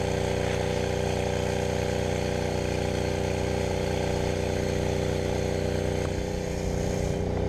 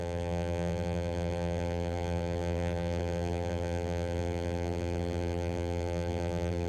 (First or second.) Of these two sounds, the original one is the first